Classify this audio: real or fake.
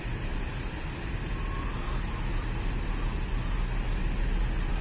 real